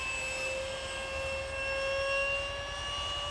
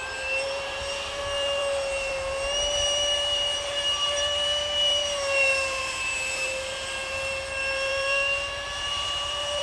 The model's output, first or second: second